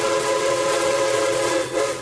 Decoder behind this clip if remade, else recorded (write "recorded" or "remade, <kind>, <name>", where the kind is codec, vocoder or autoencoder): remade, vocoder, WaveNeXt